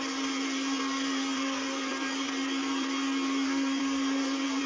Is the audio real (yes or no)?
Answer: yes